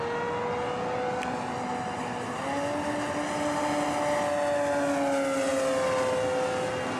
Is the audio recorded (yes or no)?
yes